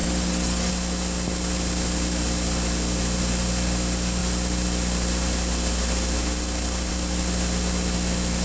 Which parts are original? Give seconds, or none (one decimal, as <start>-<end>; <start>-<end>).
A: 0.7-8.4